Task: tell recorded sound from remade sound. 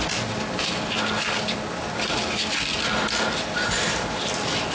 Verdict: recorded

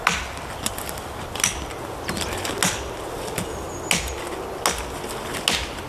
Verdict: recorded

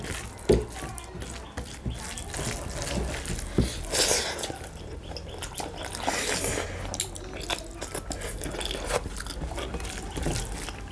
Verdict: recorded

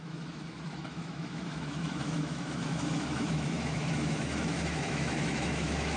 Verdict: remade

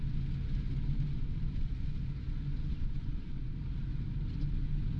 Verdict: recorded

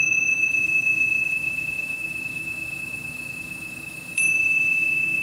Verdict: remade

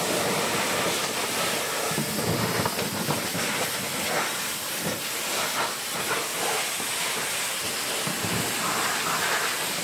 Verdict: recorded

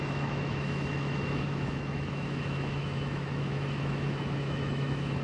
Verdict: remade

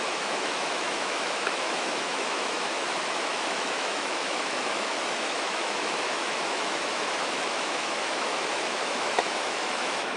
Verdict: remade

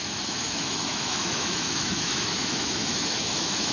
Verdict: remade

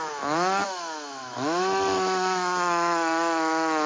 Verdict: remade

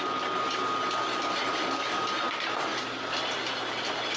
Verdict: recorded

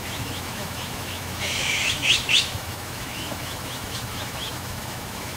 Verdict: remade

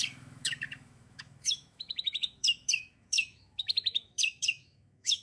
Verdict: remade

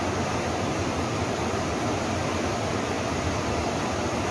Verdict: recorded